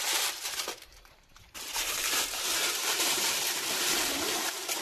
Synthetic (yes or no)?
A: yes